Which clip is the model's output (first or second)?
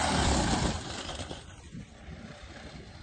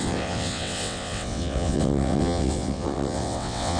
second